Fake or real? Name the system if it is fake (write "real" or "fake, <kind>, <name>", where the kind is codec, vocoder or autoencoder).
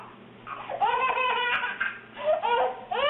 real